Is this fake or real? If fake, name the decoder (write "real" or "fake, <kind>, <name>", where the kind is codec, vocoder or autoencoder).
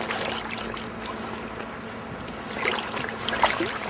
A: real